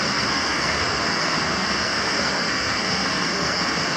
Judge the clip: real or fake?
fake